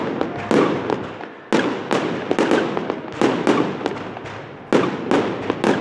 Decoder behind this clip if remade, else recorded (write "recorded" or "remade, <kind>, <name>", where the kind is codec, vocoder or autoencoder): recorded